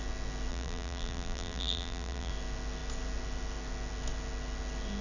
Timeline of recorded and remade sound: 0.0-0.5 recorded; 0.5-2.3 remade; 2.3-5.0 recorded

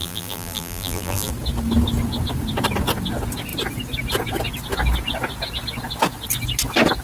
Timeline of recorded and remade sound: 0.0-1.3 remade; 1.3-7.0 recorded

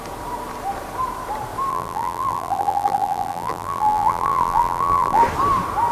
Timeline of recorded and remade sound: 0.0-1.7 recorded; 1.7-5.2 remade; 5.2-5.9 recorded

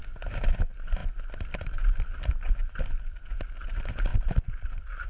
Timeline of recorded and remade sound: 0.0-0.6 remade; 0.6-4.1 recorded; 4.1-5.1 remade

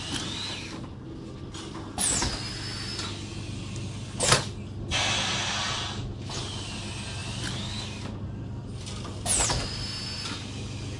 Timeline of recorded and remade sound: 0.0-7.2 recorded; 7.2-9.6 remade; 9.6-11.0 recorded

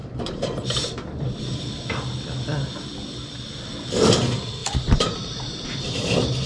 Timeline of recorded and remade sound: 0.0-1.6 remade; 1.6-4.6 recorded; 4.6-6.1 remade; 6.1-6.5 recorded

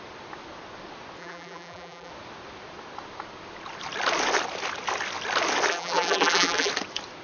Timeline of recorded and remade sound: 0.0-1.2 recorded; 1.2-2.1 remade; 2.1-5.7 recorded; 5.7-6.7 remade; 6.7-7.2 recorded

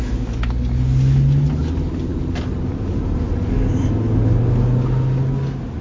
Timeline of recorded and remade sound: 0.0-5.8 recorded